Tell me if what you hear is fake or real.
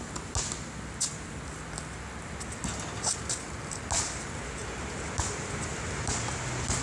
real